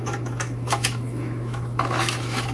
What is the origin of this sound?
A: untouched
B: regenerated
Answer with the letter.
B